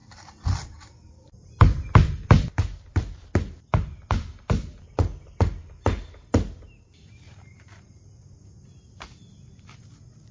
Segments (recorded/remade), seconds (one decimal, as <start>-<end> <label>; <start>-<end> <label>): 0.0-4.5 remade; 4.5-10.3 recorded